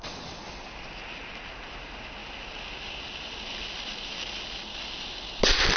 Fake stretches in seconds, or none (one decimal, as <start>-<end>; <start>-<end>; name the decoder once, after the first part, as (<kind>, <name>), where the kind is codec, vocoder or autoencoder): none